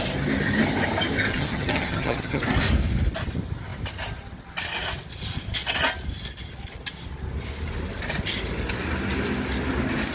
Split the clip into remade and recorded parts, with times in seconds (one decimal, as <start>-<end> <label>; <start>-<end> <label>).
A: 0.0-1.3 recorded; 1.3-2.4 remade; 2.4-10.1 recorded